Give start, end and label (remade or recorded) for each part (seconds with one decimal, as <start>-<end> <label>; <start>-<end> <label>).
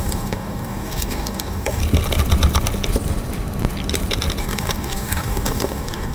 0.0-1.8 remade; 1.8-4.4 recorded; 4.4-6.1 remade